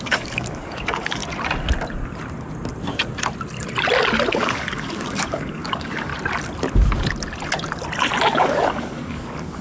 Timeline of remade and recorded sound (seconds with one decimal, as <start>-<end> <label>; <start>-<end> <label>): 0.0-1.2 remade; 1.2-4.3 recorded; 4.3-6.1 remade; 6.1-8.2 recorded; 8.2-9.6 remade